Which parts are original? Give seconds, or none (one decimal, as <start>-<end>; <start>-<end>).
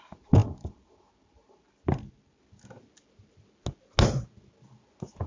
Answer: 0.0-5.3